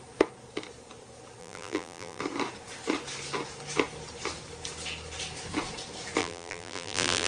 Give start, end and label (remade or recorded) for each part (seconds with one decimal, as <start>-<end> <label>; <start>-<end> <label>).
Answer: 0.0-1.4 recorded; 1.4-2.2 remade; 2.2-6.2 recorded; 6.2-7.3 remade